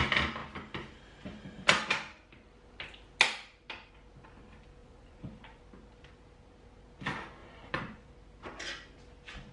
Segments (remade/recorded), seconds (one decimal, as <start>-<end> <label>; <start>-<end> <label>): 0.0-4.8 recorded; 4.8-5.6 remade; 5.6-7.4 recorded; 7.4-8.1 remade; 8.1-9.5 recorded